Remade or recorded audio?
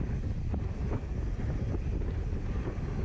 recorded